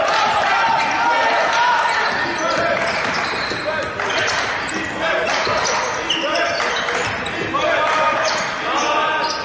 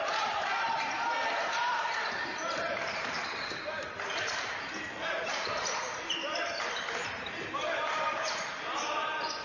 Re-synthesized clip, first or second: second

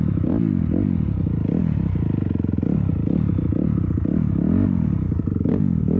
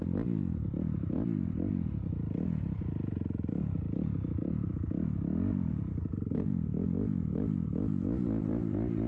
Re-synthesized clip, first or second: second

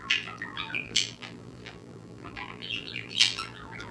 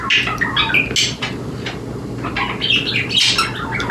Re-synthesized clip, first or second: first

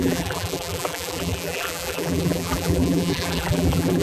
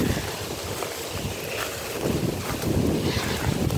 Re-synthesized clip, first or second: first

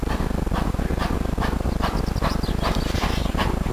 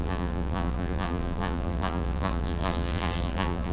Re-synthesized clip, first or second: second